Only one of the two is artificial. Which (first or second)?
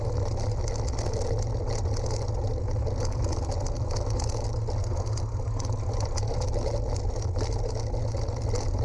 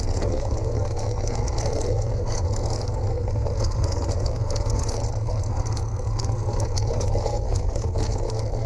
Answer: second